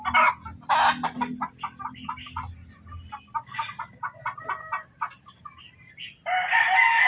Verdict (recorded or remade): recorded